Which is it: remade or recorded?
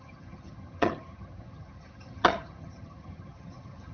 remade